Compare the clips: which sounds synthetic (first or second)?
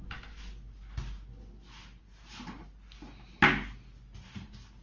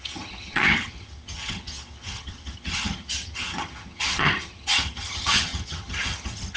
second